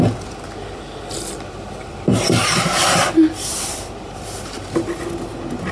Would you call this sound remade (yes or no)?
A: no